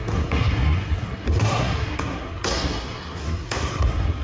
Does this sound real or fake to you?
fake